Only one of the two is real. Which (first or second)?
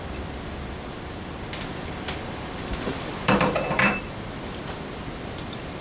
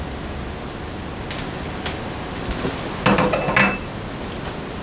second